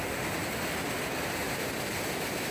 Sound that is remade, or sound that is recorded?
recorded